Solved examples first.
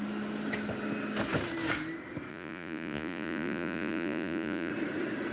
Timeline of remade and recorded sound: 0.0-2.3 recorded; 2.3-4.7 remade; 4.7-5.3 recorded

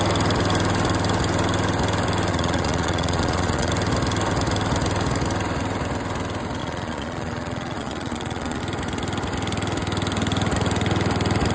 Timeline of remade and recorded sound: 0.0-2.3 recorded; 2.3-3.7 remade; 3.7-6.6 recorded; 6.6-8.6 remade; 8.6-11.5 recorded

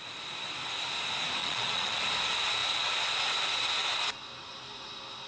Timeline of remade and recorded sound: 0.0-1.4 recorded; 1.4-2.0 remade; 2.0-5.3 recorded

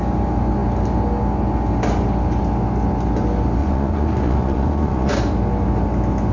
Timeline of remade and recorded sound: 0.0-3.6 recorded; 3.6-5.1 remade; 5.1-6.3 recorded

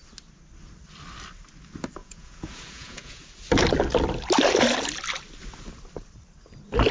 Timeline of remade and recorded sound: 0.0-2.0 recorded; 2.0-3.2 remade; 3.2-6.9 recorded

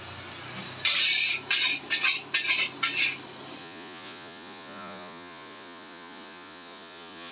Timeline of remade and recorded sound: 0.0-3.6 recorded; 3.6-7.3 remade